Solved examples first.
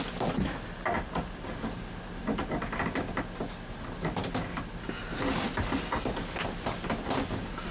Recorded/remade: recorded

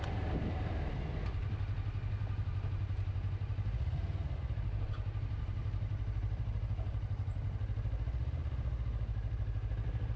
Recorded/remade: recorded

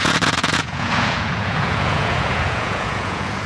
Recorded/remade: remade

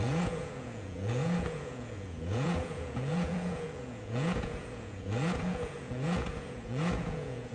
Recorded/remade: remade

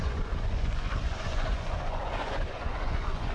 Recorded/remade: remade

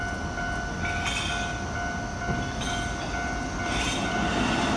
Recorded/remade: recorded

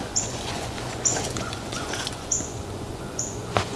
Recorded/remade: remade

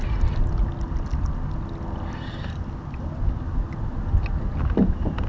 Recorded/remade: recorded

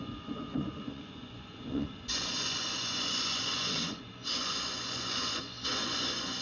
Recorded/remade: remade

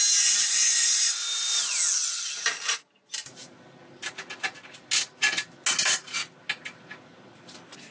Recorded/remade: recorded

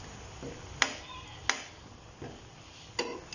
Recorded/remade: recorded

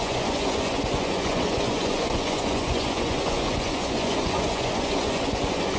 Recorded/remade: remade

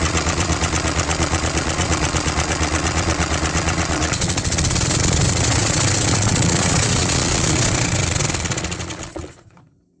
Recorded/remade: remade